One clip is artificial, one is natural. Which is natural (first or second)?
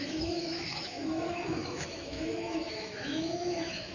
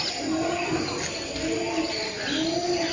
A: second